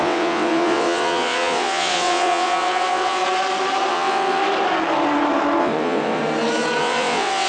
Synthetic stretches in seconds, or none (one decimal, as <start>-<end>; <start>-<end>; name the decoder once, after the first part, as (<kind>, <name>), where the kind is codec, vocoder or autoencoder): 0.0-3.2 (vocoder, WaveNeXt); 3.9-4.4; 5.6-6.2; 6.8-7.5